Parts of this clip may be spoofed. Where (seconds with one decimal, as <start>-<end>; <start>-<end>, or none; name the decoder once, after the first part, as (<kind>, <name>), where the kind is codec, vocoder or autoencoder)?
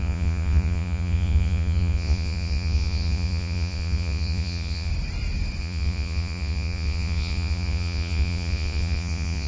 0.0-4.9 (vocoder, Vocos); 5.6-9.5